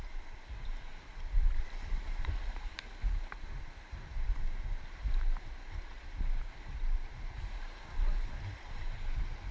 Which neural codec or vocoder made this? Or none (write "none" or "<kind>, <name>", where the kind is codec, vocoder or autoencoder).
vocoder, BigVGAN v2